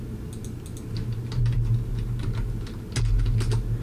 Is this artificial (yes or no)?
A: no